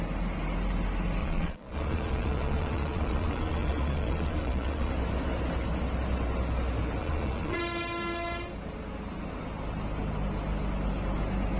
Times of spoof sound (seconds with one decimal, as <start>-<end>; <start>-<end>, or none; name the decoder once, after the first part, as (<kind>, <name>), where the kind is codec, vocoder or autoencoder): 1.2-4.9 (vocoder, Vocos); 7.0-7.6